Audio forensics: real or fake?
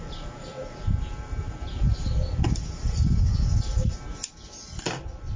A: real